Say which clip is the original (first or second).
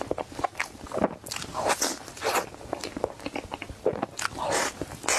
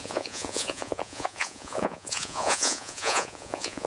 first